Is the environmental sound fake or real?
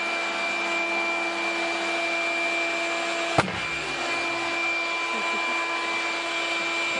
real